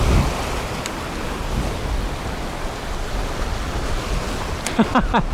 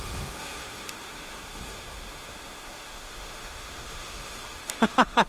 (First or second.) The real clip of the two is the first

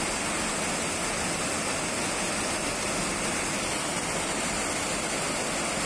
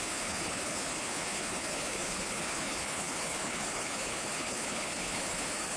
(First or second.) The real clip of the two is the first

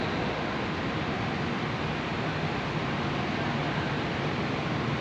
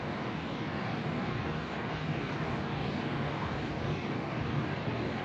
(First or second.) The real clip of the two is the first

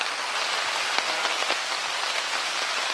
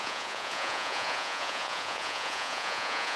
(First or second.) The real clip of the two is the first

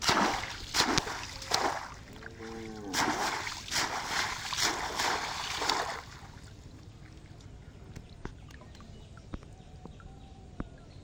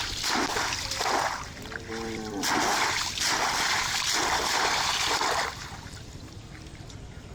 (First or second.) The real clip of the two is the first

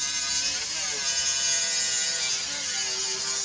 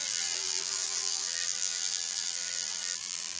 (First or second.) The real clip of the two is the first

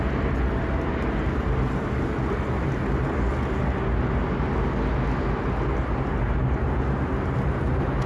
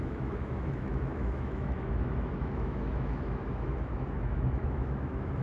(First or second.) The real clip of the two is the first